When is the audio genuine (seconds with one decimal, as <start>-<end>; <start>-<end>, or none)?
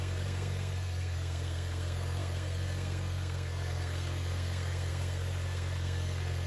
none